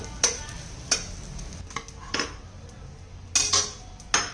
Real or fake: real